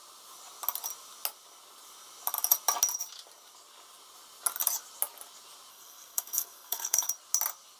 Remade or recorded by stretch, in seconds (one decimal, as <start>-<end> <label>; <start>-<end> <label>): 0.0-5.7 recorded; 5.7-7.1 remade; 7.1-7.8 recorded